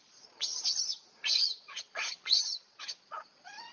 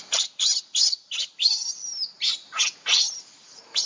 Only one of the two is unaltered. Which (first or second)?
second